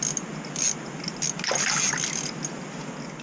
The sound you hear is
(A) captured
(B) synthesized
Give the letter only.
A